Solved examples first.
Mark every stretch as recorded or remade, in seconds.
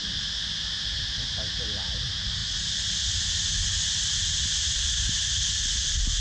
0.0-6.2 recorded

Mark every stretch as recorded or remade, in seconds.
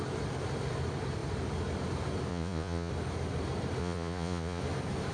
0.0-2.3 recorded; 2.3-2.9 remade; 2.9-3.8 recorded; 3.8-4.6 remade; 4.6-5.1 recorded